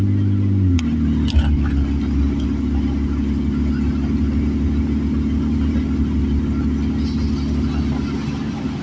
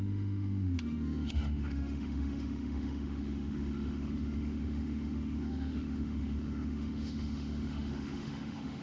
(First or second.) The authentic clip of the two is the first